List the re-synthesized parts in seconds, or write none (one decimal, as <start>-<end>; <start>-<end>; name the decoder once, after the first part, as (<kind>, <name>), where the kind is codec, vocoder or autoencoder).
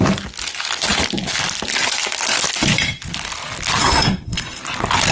3.8-4.6 (codec, SNAC)